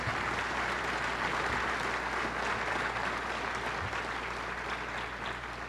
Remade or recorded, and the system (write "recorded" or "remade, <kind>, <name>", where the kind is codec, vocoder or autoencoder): recorded